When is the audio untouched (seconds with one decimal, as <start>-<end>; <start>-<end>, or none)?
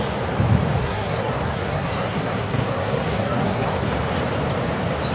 0.0-0.8; 3.9-5.1